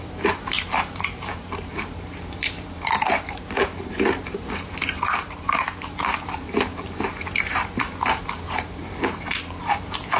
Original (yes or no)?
no